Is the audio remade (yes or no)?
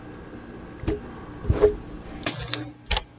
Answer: no